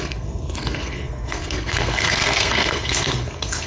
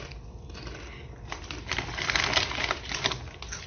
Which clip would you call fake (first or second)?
first